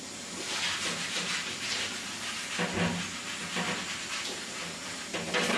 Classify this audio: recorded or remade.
recorded